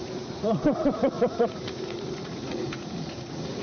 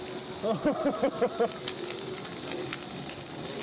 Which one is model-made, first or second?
first